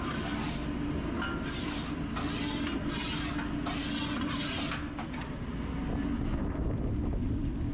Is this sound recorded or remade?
recorded